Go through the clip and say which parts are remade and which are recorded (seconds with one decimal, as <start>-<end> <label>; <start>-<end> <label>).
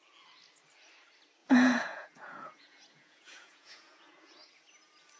0.0-1.4 recorded; 1.4-4.5 remade; 4.5-5.2 recorded